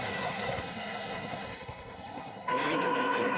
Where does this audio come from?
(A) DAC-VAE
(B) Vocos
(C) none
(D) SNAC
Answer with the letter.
D